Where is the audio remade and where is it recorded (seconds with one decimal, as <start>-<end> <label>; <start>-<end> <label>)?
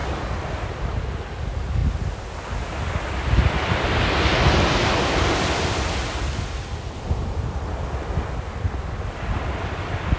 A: 0.0-10.2 recorded